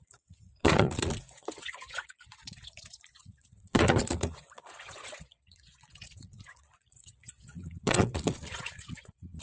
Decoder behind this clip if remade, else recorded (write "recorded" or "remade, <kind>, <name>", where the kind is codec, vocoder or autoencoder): remade, vocoder, Vocos